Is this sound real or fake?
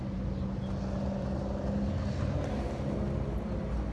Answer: real